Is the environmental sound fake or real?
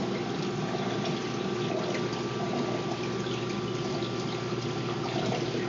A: real